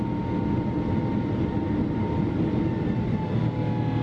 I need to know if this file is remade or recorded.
recorded